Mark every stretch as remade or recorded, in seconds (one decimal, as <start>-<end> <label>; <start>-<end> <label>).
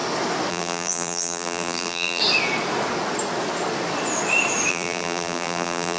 0.0-0.5 recorded; 0.5-2.2 remade; 2.2-4.7 recorded; 4.7-6.0 remade